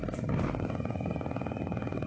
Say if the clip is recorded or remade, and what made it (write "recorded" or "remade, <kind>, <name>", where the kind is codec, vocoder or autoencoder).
recorded